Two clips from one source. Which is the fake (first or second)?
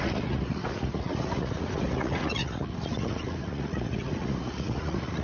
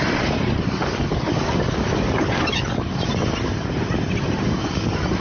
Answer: first